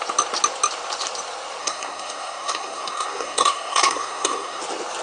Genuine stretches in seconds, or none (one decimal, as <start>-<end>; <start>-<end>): 0.0-1.6; 4.6-5.0